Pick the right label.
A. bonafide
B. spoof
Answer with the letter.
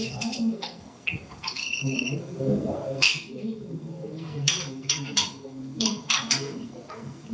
B